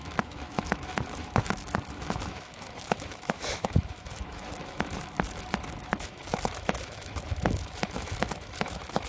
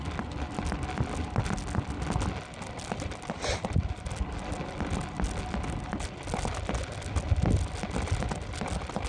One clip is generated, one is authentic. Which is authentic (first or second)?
second